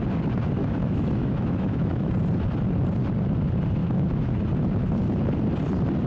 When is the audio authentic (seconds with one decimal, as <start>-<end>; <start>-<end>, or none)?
0.0-0.6; 2.1-3.8; 4.4-6.1